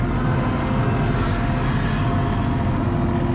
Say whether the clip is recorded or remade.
recorded